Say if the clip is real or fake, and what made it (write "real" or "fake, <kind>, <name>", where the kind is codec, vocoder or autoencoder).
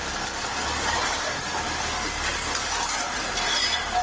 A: real